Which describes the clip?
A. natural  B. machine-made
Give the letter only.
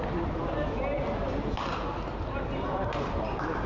A